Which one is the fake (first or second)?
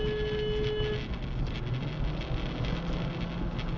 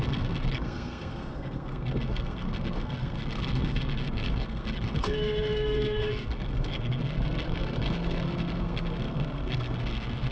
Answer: second